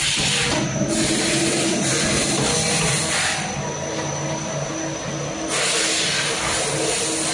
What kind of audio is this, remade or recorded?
recorded